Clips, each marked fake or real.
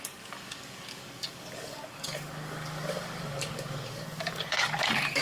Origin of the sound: fake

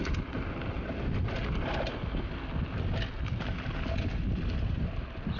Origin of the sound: real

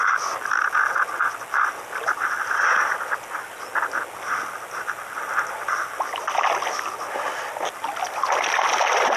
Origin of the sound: real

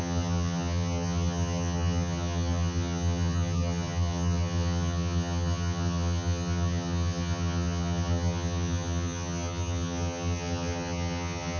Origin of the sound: fake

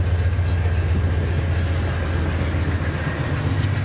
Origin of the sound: real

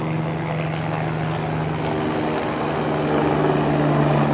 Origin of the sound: real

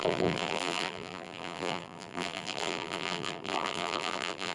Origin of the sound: fake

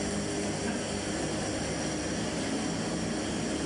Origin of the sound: real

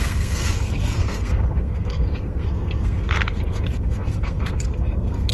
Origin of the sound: fake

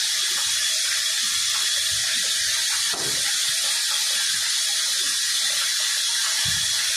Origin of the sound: real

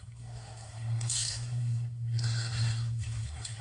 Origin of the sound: fake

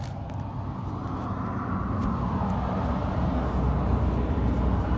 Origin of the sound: real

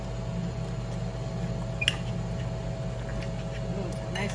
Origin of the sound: real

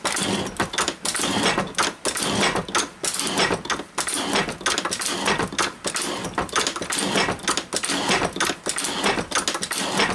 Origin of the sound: real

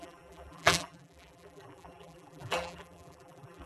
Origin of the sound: fake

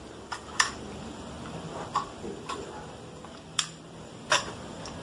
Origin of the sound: fake